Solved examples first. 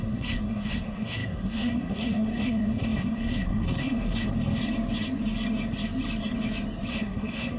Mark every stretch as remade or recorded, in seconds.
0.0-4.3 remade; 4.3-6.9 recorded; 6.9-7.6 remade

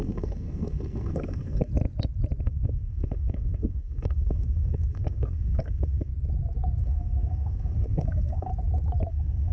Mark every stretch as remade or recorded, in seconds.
0.0-1.7 remade; 1.7-2.4 recorded; 2.4-6.1 remade; 6.1-6.8 recorded; 6.8-8.5 remade; 8.5-9.1 recorded; 9.1-9.5 remade

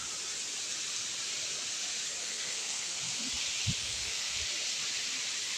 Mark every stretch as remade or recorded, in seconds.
0.0-2.2 recorded; 2.2-3.0 remade; 3.0-3.8 recorded; 3.8-4.4 remade; 4.4-5.6 recorded